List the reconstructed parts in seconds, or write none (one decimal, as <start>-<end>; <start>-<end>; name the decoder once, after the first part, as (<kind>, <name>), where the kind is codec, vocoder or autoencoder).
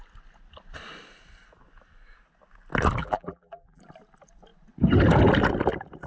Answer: 3.0-3.8 (vocoder, BigVGAN v2)